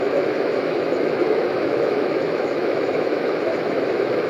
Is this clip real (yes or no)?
no